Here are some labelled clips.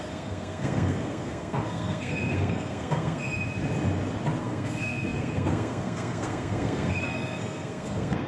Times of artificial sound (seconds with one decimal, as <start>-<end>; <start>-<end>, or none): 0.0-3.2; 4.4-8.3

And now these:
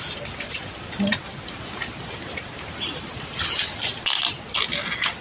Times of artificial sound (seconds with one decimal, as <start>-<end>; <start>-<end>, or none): none

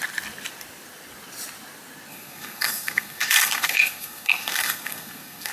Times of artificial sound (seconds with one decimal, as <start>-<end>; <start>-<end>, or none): 2.1-5.5

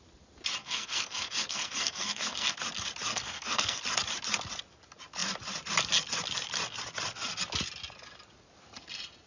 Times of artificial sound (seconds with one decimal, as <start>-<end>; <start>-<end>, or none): 0.6-2.6; 3.1-3.8